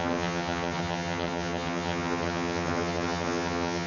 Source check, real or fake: fake